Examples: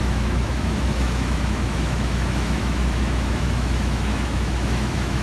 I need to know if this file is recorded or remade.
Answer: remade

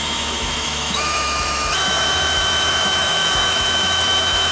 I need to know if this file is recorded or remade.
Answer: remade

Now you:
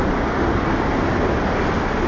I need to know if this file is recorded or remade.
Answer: recorded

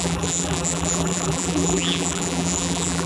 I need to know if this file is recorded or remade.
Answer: remade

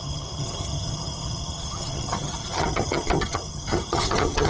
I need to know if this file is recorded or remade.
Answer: remade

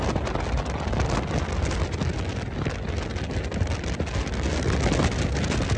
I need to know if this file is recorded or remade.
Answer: recorded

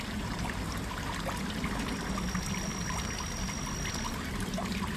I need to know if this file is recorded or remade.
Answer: recorded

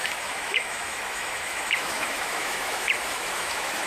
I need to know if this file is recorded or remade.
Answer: remade